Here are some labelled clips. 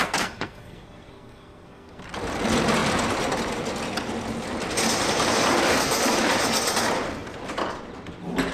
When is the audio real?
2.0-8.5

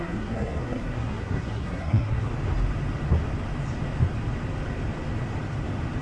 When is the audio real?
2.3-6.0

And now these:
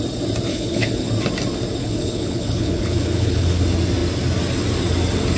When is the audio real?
0.0-0.5; 1.1-1.8; 3.6-5.4

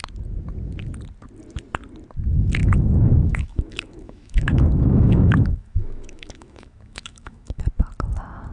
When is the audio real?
0.0-2.6; 7.6-8.5